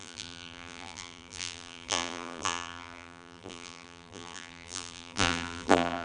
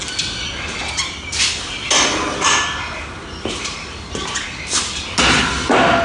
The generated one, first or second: first